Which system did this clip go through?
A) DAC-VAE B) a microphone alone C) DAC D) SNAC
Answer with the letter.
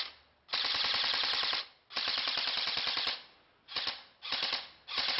B